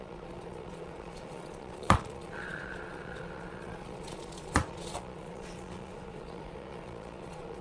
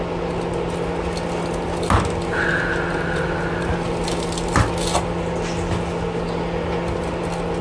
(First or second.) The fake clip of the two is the first